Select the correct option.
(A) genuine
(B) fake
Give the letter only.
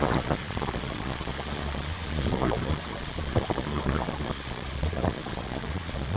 B